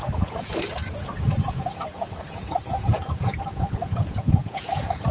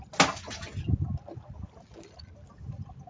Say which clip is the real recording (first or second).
second